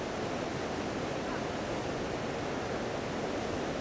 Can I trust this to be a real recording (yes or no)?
yes